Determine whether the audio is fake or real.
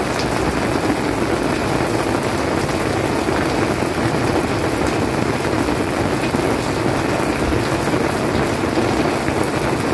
real